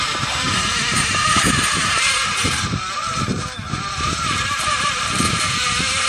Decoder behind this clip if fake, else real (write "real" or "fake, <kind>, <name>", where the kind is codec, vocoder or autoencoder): fake, vocoder, BigVGAN v2